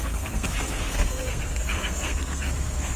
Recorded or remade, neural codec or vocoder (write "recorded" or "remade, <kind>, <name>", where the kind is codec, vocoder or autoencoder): remade, codec, SNAC